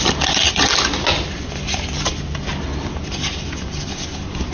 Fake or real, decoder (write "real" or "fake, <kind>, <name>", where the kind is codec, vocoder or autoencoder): real